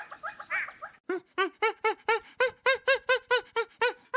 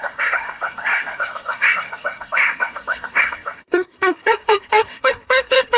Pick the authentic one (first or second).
first